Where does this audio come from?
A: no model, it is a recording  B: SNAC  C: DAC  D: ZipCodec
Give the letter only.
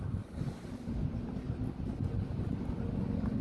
A